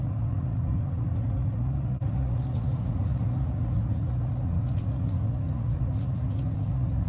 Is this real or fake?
fake